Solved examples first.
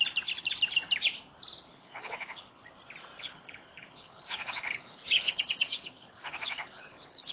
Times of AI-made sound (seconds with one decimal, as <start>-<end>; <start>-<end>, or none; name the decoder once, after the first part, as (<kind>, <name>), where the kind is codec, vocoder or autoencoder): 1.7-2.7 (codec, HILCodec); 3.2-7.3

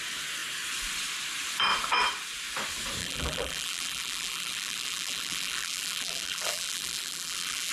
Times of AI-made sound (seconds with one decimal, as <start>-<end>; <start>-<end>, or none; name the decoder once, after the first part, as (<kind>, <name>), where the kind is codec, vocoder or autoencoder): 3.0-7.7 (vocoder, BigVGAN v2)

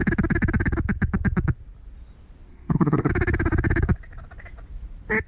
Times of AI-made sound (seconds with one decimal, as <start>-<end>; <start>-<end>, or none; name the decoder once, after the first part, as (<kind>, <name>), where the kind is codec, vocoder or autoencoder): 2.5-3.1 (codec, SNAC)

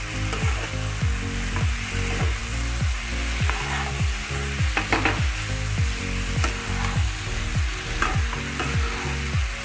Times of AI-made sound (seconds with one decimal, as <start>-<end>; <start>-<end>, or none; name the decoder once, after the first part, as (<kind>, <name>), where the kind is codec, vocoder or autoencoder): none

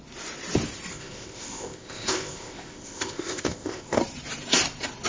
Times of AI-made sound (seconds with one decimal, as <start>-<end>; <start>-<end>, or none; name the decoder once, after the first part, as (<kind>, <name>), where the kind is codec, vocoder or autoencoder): 0.9-4.0 (codec, ZipCodec)

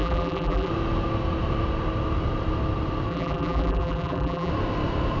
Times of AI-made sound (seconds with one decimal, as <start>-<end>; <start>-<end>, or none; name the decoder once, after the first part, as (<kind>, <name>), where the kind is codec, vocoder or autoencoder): 0.0-0.7 (vocoder, BigVGAN v2); 3.1-4.5

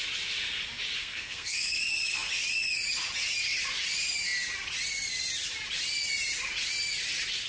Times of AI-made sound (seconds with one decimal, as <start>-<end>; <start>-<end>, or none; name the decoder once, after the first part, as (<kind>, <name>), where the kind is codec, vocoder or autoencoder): 1.0-1.8 (codec, SNAC)